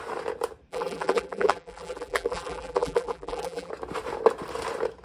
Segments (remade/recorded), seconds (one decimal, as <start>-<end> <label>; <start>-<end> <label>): 0.0-0.7 recorded; 0.7-3.7 remade; 3.7-5.0 recorded